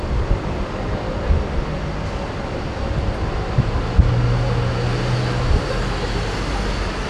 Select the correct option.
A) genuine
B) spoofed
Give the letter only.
A